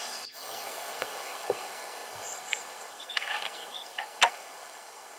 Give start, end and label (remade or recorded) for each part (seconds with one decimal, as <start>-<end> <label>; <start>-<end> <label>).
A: 0.0-5.2 remade